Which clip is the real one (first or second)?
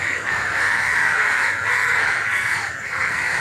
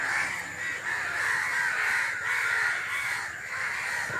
second